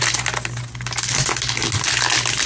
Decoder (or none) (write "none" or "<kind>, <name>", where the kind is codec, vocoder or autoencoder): none